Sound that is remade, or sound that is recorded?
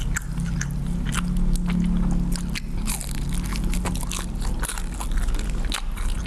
recorded